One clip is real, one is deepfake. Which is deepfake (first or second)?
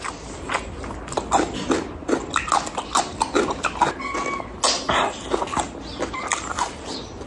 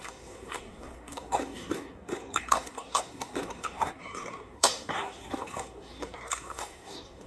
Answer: second